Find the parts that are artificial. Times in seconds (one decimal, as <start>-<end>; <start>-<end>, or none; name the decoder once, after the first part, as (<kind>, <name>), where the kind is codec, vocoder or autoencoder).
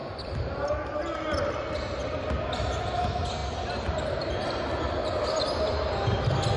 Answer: 0.0-0.7 (vocoder, BigVGAN v2); 3.4-4.3